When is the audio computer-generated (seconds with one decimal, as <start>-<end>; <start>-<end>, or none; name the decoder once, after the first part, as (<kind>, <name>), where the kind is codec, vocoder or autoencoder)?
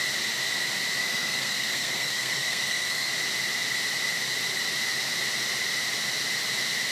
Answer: 1.0-3.1 (codec, SNAC)